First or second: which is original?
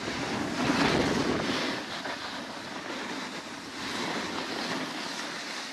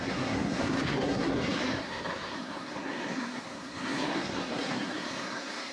first